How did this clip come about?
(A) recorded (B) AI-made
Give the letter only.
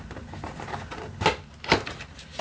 A